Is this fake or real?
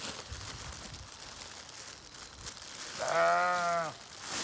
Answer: real